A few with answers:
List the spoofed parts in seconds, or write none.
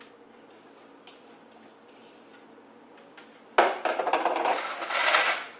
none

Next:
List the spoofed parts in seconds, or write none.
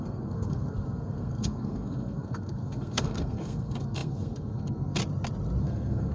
0.0-5.0 (codec, SNAC); 5.6-6.1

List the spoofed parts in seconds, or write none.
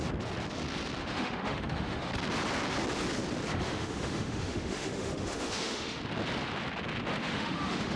1.0-2.1 (autoencoder, DAC-VAE); 3.5-6.0; 7.2-8.0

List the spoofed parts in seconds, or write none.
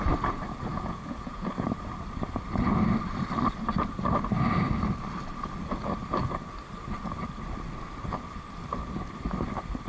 0.7-1.7 (vocoder, Vocos)